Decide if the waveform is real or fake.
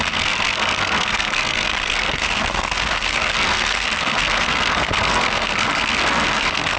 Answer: fake